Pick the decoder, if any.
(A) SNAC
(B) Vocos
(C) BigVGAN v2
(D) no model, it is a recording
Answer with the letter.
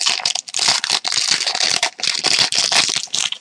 D